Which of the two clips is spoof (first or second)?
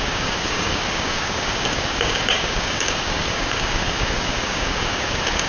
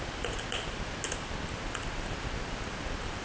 first